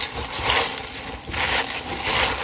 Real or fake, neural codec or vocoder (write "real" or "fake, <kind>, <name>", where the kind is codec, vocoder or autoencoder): real